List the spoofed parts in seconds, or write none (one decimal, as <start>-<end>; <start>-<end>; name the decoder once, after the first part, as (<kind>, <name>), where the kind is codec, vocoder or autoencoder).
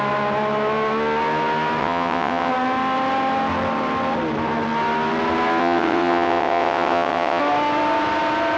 1.8-2.5 (vocoder, WaveNeXt); 5.6-7.4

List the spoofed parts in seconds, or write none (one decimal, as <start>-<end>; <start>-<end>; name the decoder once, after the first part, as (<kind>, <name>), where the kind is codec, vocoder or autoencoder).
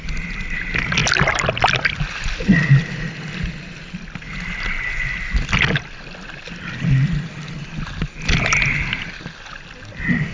none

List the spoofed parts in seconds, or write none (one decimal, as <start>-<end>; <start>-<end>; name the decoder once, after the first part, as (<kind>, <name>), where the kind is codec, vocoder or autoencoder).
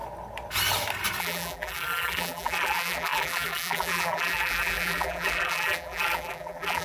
1.2-6.8 (vocoder, BigVGAN v2)